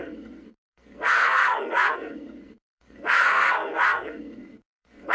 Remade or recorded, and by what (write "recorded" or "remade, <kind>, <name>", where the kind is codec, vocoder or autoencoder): remade, codec, SNAC